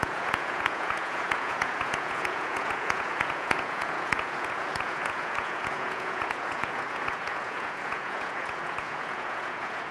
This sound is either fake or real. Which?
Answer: fake